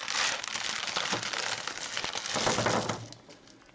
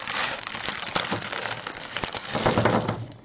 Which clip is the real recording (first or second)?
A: first